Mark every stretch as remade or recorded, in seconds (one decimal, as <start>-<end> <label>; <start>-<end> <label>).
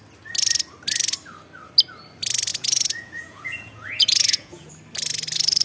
0.0-2.5 recorded; 2.5-4.7 remade; 4.7-5.6 recorded